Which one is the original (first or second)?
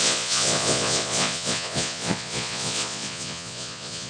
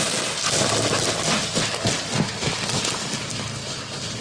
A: second